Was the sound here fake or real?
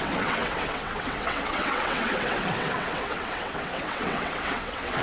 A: fake